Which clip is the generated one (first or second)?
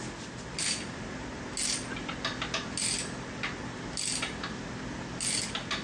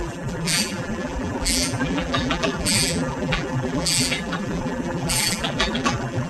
second